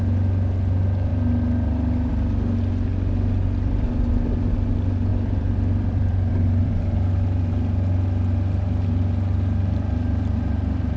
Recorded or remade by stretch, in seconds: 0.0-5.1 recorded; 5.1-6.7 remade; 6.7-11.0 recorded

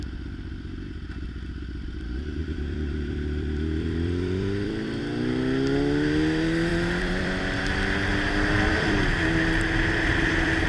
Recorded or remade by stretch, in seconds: 0.0-2.4 recorded; 2.4-5.0 remade; 5.0-6.7 recorded; 6.7-7.6 remade; 7.6-8.1 recorded; 8.1-9.1 remade; 9.1-10.7 recorded

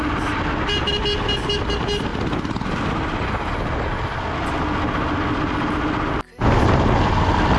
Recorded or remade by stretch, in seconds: 0.0-7.6 recorded

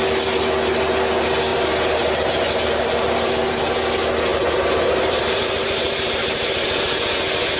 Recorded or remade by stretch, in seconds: 0.0-1.5 recorded; 1.5-3.6 remade; 3.6-4.3 recorded; 4.3-7.0 remade; 7.0-7.6 recorded

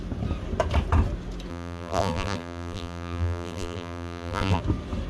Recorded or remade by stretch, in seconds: 0.0-1.5 recorded; 1.5-4.6 remade; 4.6-5.1 recorded

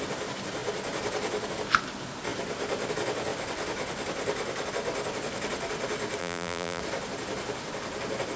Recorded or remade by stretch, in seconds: 0.0-6.2 recorded; 6.2-6.8 remade; 6.8-8.4 recorded

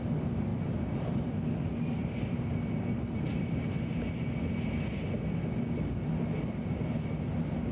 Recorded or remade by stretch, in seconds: 0.0-7.7 recorded